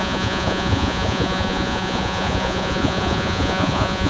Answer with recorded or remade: remade